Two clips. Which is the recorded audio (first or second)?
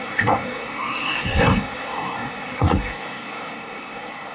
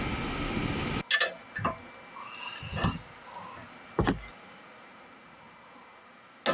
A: second